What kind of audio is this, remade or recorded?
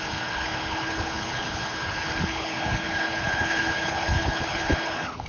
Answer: remade